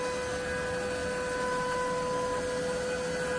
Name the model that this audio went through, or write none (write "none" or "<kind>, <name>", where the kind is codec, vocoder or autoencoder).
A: none